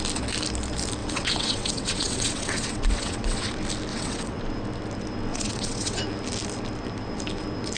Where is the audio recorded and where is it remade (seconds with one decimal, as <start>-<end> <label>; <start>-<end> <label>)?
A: 0.0-1.0 recorded; 1.0-3.5 remade; 3.5-3.9 recorded; 3.9-4.4 remade; 4.4-5.3 recorded; 5.3-6.0 remade; 6.0-7.8 recorded

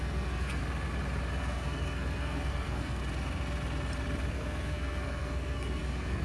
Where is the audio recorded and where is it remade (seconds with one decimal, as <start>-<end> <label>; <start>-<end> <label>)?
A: 0.0-0.6 remade; 0.6-1.4 recorded; 1.4-3.0 remade; 3.0-4.3 recorded; 4.3-6.2 remade

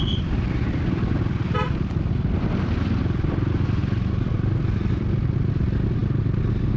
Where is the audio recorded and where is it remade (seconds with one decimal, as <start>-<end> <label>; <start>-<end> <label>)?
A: 0.0-6.8 remade

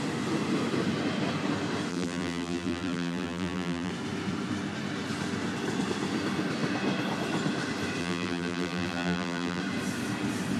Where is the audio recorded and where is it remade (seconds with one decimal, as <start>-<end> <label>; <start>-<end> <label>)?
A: 0.0-1.9 recorded; 1.9-3.9 remade; 3.9-8.0 recorded; 8.0-9.6 remade; 9.6-10.6 recorded

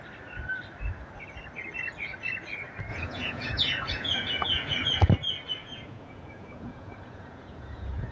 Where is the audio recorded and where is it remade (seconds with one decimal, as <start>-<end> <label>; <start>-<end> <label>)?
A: 0.0-2.9 recorded; 2.9-5.1 remade; 5.1-5.6 recorded; 5.6-8.1 remade

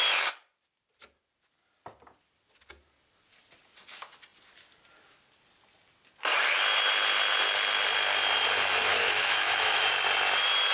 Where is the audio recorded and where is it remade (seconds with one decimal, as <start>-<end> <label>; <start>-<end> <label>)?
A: 0.0-8.9 recorded; 8.9-9.8 remade; 9.8-10.7 recorded

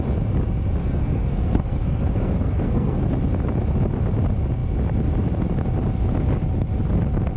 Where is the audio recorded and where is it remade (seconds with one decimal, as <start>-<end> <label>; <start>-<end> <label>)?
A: 0.0-0.8 recorded; 0.8-3.0 remade; 3.0-7.4 recorded

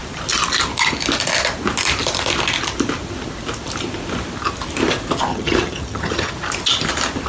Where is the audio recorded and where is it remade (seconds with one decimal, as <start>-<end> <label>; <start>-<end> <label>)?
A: 0.0-5.3 recorded; 5.3-6.3 remade; 6.3-7.3 recorded